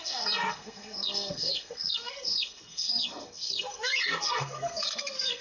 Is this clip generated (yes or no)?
yes